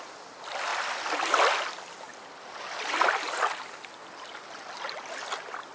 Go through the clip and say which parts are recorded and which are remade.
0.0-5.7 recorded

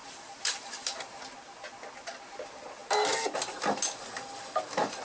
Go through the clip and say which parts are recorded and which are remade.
0.0-1.2 remade; 1.2-5.0 recorded